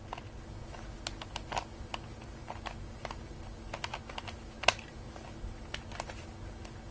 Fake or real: real